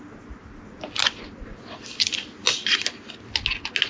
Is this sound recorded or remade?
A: recorded